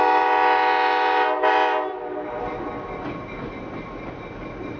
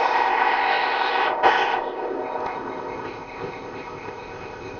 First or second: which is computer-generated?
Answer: second